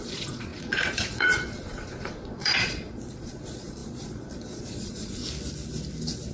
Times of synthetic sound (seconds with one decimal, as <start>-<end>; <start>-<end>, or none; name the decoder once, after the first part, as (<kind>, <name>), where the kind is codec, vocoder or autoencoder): 0.0-5.2 (vocoder, Vocos)